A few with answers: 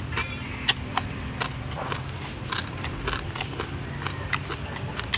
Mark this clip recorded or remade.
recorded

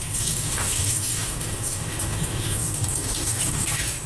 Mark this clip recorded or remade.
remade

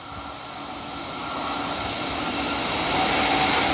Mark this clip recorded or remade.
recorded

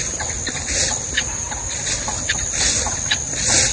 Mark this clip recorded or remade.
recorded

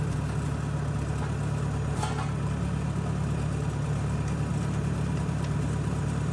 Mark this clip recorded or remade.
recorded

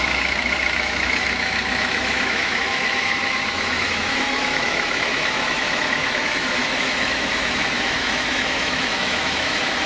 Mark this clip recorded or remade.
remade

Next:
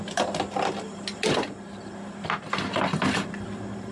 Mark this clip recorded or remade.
recorded